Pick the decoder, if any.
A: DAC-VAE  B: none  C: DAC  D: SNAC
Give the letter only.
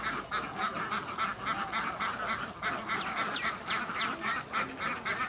B